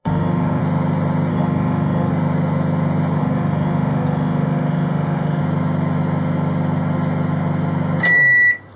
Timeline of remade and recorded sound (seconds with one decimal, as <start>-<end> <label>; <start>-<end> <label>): 0.0-0.6 remade; 0.6-1.3 recorded; 1.3-2.1 remade; 2.1-3.2 recorded; 3.2-5.4 remade; 5.4-8.8 recorded